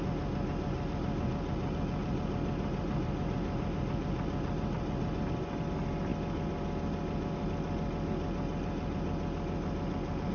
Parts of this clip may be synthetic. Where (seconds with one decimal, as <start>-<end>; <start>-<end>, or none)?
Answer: none